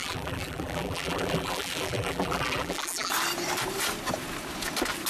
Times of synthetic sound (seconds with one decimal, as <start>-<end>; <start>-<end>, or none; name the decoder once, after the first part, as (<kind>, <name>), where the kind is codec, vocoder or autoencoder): 0.0-3.1 (vocoder, BigVGAN v2)